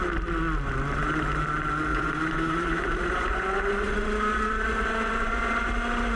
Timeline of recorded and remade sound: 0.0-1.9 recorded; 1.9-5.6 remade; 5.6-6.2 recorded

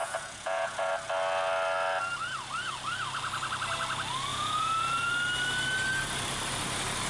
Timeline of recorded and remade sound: 0.0-0.9 remade; 0.9-4.3 recorded; 4.3-5.1 remade; 5.1-7.1 recorded

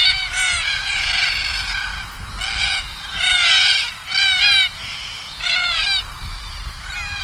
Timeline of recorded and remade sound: 0.0-1.9 remade; 1.9-2.6 recorded; 2.6-4.0 remade; 4.0-4.7 recorded; 4.7-5.8 remade; 5.8-7.2 recorded

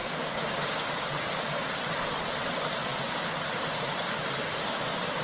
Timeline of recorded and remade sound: 0.0-5.2 recorded

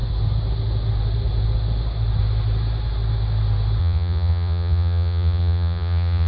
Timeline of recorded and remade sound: 0.0-3.8 recorded; 3.8-6.3 remade

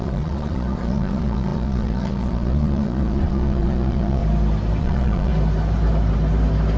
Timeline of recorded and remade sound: 0.0-4.2 remade; 4.2-4.8 recorded; 4.8-5.3 remade; 5.3-6.8 recorded